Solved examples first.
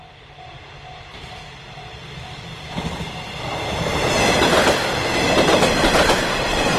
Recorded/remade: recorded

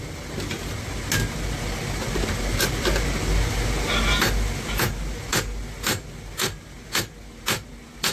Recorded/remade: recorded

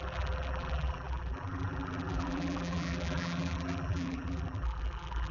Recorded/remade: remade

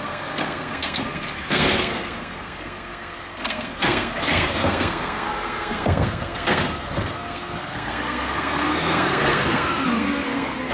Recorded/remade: remade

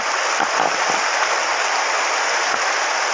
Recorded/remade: recorded